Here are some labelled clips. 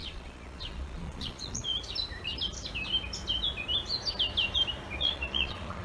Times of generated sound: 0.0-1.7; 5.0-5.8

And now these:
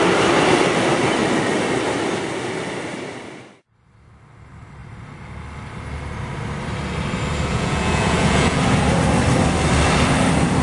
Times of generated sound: 7.5-8.6

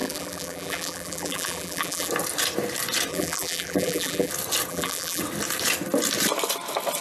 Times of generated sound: 0.0-2.1; 3.1-4.3; 4.7-5.2

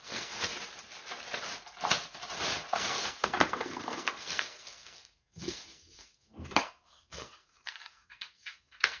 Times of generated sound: 0.0-0.5; 2.7-9.0